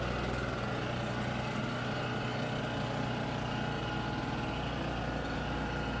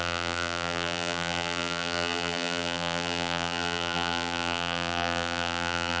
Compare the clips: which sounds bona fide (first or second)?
first